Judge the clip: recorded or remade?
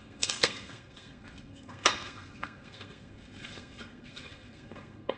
remade